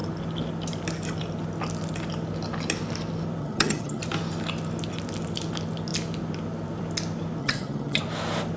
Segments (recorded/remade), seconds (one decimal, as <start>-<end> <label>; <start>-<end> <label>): 0.0-3.4 recorded; 3.4-4.0 remade; 4.0-7.4 recorded; 7.4-8.0 remade; 8.0-8.6 recorded